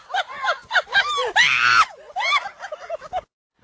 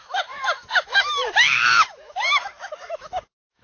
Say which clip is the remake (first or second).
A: second